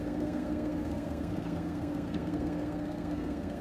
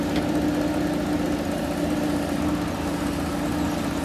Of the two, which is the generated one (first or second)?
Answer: first